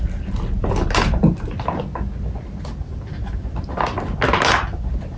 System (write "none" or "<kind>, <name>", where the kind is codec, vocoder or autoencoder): none